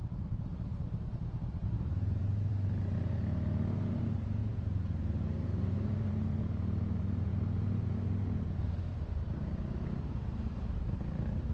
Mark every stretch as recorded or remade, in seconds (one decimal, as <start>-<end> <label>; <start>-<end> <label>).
0.0-2.5 remade; 2.5-3.9 recorded; 3.9-11.5 remade